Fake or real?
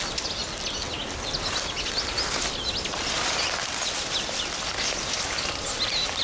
real